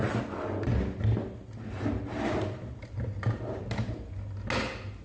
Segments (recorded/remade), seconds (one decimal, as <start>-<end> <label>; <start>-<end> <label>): 0.0-5.0 recorded